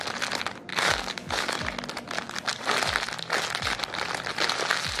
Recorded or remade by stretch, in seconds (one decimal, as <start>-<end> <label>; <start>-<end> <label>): 0.0-0.7 recorded; 0.7-1.6 remade; 1.6-5.0 recorded